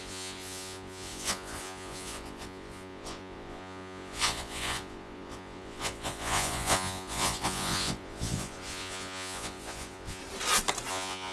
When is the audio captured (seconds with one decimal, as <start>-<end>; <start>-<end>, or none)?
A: 10.2-10.9